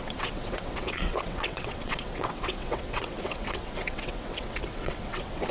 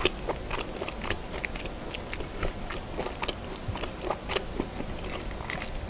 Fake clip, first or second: first